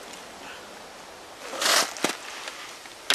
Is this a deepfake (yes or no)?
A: no